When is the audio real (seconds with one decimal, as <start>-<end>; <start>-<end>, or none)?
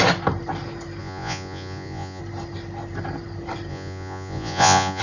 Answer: 0.0-1.0; 2.2-3.7